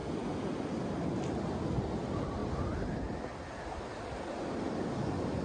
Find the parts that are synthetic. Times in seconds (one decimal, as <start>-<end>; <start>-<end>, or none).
none